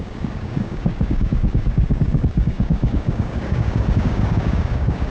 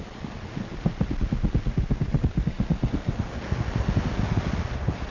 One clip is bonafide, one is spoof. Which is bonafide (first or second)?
second